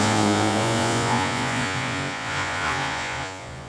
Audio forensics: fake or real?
fake